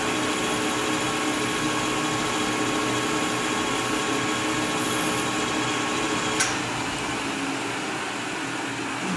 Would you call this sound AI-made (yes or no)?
no